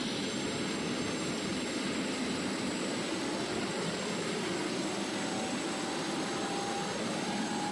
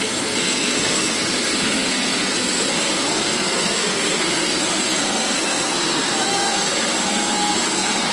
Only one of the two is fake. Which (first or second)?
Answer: second